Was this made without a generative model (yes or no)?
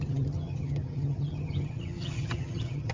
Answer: no